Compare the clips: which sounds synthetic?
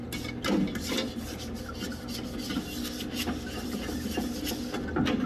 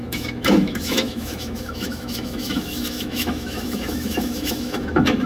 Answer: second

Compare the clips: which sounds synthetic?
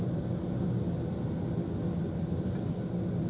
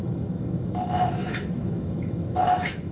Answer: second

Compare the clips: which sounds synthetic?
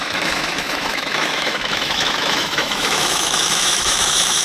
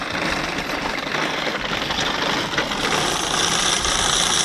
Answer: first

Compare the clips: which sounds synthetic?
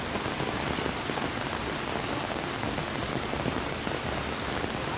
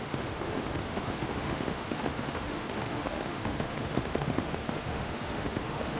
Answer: second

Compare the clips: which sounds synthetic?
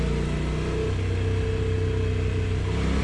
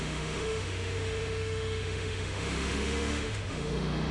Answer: second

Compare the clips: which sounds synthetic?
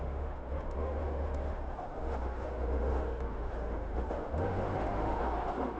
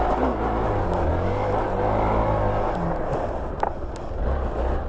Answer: first